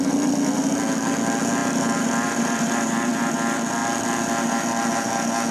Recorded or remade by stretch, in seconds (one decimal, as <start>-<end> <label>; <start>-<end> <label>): 0.0-1.6 recorded; 1.6-3.3 remade; 3.3-5.5 recorded